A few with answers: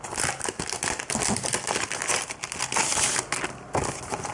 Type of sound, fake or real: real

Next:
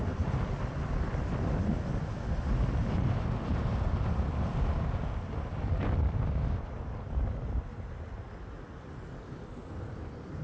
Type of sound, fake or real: real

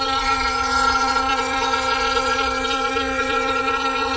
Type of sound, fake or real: fake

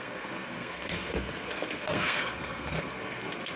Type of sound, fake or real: fake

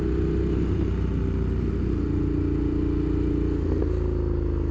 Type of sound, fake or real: real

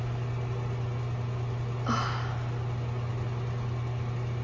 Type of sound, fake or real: real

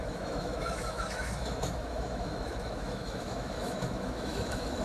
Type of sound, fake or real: fake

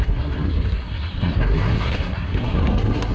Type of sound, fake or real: fake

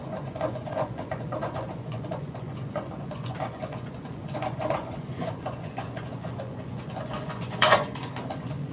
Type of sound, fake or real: fake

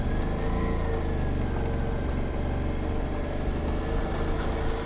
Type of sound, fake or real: real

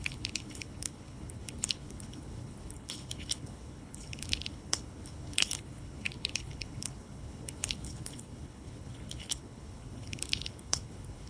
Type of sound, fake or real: fake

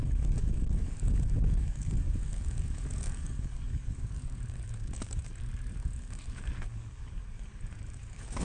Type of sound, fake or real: fake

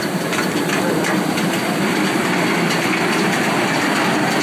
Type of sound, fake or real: fake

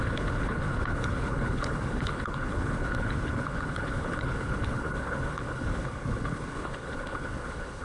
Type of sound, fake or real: fake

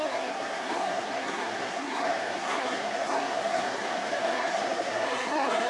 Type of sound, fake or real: fake